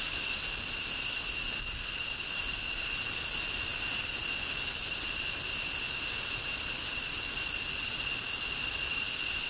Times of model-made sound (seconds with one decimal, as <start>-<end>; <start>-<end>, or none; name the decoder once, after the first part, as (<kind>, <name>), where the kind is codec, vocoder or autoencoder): none